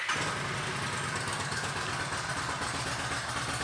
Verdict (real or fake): real